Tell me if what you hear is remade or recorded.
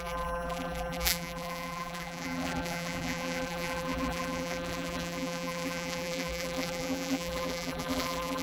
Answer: remade